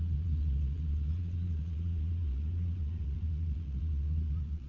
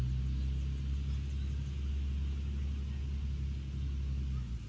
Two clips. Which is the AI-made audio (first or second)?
first